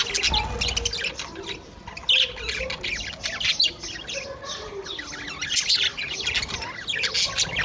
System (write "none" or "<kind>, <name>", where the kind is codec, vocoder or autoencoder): none